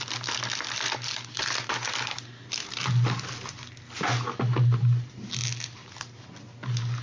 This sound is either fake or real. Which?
real